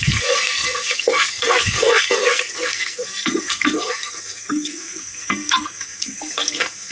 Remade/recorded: remade